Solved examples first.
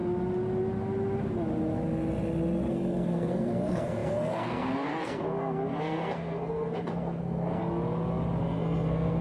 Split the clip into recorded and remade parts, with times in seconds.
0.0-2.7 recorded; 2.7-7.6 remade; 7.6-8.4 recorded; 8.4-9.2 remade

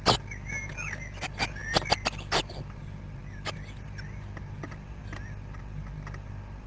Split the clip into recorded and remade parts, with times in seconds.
0.0-6.7 recorded

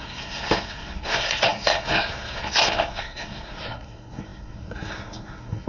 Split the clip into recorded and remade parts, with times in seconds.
0.0-5.7 remade

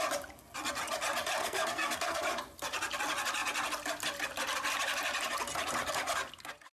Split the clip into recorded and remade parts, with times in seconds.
0.0-1.4 recorded; 1.4-2.2 remade; 2.2-6.8 recorded

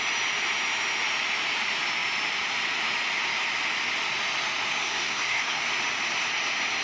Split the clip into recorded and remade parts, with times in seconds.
0.0-4.8 recorded; 4.8-5.6 remade; 5.6-6.8 recorded